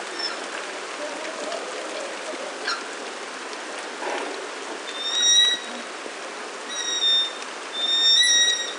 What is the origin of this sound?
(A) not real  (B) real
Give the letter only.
B